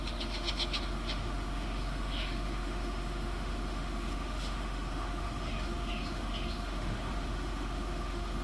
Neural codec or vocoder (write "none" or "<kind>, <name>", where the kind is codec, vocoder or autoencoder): autoencoder, DAC-VAE